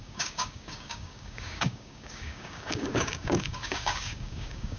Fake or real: fake